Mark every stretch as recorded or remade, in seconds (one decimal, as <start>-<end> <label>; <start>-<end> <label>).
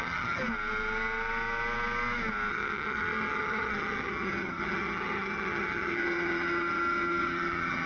0.0-0.4 remade; 0.4-2.5 recorded; 2.5-7.9 remade